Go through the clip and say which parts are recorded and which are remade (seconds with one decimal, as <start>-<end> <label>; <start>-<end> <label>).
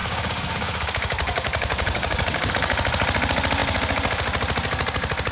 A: 0.0-2.5 remade; 2.5-5.3 recorded